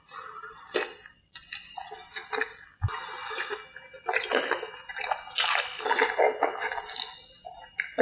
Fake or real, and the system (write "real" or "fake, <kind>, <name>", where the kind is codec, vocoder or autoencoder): real